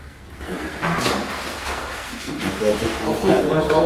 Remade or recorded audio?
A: remade